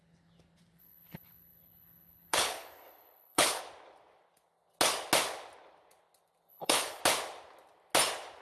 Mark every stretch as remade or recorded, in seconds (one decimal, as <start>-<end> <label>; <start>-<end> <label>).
0.0-0.8 recorded; 0.8-3.6 remade; 3.6-6.5 recorded; 6.5-7.0 remade; 7.0-8.4 recorded

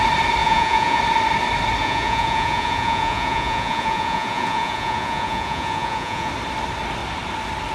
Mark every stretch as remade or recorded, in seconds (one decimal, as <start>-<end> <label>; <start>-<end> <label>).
0.0-0.4 recorded; 0.4-1.0 remade; 1.0-1.8 recorded; 1.8-6.3 remade; 6.3-7.7 recorded

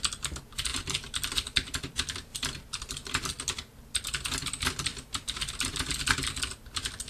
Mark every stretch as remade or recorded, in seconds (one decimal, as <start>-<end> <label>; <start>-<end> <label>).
0.0-0.7 recorded; 0.7-1.8 remade; 1.8-2.3 recorded; 2.3-2.9 remade; 2.9-4.9 recorded; 4.9-5.5 remade; 5.5-7.1 recorded